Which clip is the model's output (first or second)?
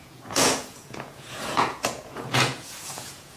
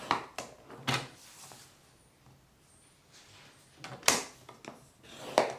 first